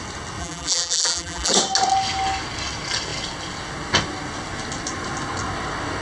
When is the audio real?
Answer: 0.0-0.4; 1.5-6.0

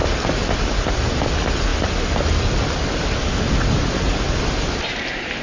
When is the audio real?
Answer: 0.0-5.4

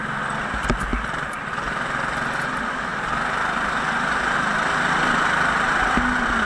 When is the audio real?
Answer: 0.0-6.5

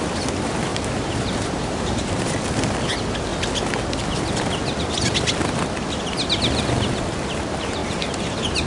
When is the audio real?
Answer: 0.0-0.7; 2.2-7.8